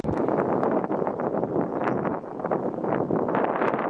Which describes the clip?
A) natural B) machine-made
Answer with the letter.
A